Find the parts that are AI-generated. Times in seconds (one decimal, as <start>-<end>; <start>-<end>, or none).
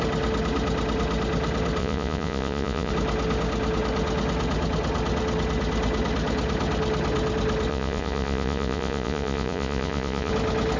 1.8-2.9; 7.7-10.3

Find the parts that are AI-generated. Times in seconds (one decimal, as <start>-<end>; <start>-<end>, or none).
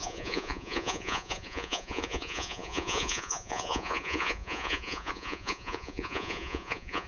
0.0-7.1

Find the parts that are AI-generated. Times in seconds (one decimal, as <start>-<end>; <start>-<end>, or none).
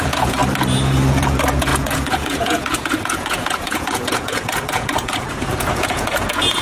0.0-0.4; 1.1-6.6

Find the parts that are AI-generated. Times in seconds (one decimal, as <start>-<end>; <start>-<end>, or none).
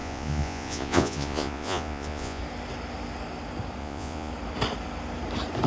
0.0-2.4; 3.8-4.3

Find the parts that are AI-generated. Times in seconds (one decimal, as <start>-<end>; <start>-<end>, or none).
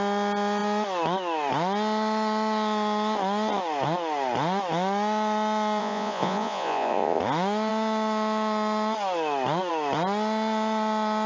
5.8-7.2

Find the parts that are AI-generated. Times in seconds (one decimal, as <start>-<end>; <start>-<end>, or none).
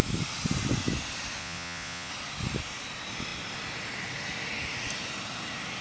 1.4-2.1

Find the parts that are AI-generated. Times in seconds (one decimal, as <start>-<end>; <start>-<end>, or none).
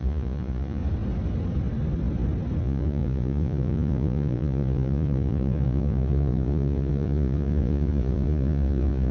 0.0-0.8; 2.6-9.1